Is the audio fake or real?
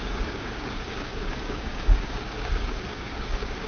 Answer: fake